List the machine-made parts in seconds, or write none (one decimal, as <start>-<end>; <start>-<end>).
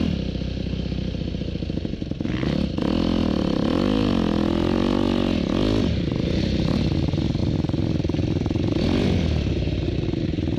none